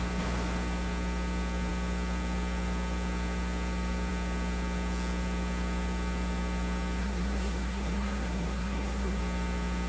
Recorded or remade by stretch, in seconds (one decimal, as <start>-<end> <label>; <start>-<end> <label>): 0.0-7.0 recorded; 7.0-9.2 remade; 9.2-9.9 recorded

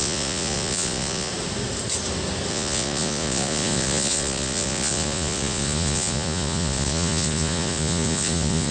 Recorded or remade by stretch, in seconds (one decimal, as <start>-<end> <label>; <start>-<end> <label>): 0.0-1.3 remade; 1.3-2.5 recorded; 2.5-8.7 remade